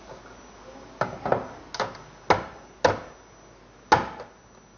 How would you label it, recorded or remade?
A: recorded